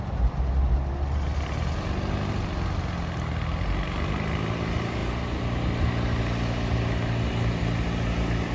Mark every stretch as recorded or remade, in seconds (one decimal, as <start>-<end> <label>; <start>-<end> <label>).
0.0-8.5 recorded